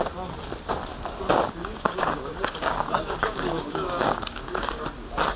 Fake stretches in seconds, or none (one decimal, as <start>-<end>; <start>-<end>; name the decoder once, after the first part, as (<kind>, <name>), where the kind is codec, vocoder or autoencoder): 1.6-4.8 (codec, DAC)